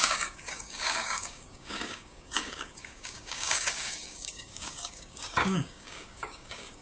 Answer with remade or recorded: remade